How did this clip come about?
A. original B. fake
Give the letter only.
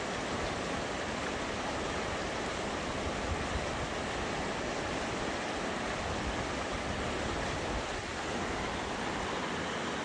A